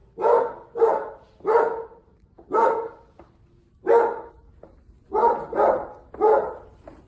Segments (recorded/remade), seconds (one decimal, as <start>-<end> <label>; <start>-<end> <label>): 0.0-7.1 recorded